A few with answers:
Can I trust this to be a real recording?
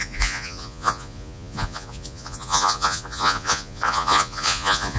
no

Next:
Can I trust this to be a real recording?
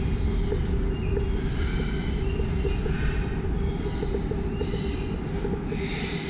yes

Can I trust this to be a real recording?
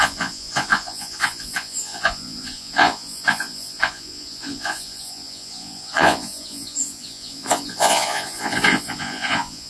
no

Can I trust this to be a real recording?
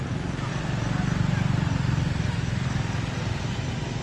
yes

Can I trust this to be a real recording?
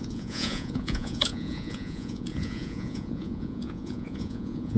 no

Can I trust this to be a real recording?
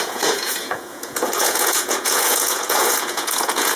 no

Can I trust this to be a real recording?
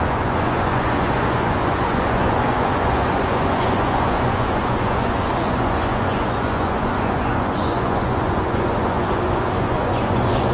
no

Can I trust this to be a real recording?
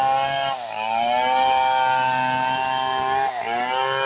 yes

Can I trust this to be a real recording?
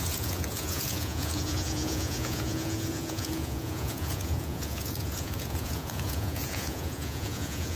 no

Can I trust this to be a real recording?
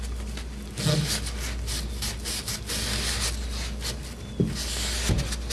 yes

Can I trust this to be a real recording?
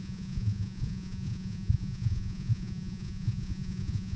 no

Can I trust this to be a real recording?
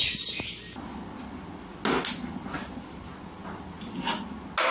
yes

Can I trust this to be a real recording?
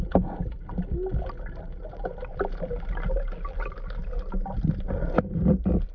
yes